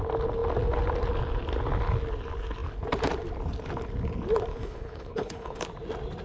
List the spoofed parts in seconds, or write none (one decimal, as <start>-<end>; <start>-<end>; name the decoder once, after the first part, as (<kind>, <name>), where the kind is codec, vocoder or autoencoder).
4.5-5.6 (codec, HILCodec)